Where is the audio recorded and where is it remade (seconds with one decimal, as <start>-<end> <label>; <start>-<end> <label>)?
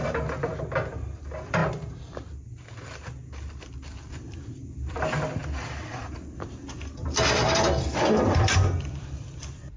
0.0-0.5 remade; 0.5-1.2 recorded; 1.2-1.6 remade; 1.6-4.1 recorded; 4.1-9.8 remade